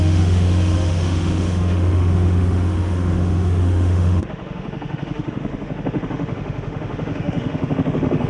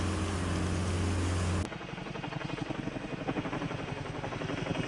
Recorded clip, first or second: second